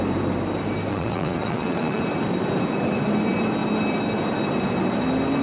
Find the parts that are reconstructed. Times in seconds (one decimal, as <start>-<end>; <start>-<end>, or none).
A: 0.9-2.0